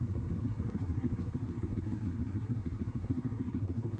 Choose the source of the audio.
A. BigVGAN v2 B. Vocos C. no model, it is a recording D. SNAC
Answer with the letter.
D